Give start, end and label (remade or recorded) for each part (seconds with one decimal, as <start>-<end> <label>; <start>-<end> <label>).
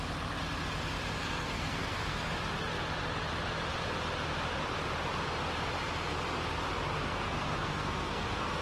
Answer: 0.0-1.2 recorded; 1.2-2.3 remade; 2.3-7.0 recorded; 7.0-8.6 remade